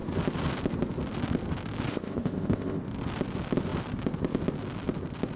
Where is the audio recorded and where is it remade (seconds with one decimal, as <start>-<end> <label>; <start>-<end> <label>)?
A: 0.0-1.9 recorded; 1.9-2.8 remade; 2.8-5.4 recorded